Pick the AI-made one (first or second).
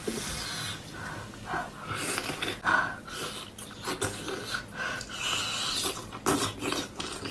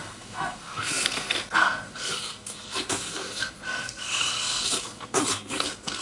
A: second